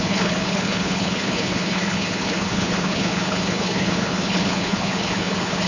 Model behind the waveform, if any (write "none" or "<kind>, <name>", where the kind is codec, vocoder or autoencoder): codec, HILCodec